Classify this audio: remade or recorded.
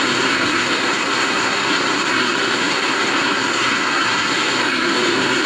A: remade